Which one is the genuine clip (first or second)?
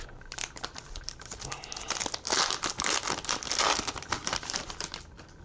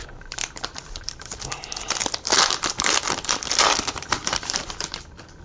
first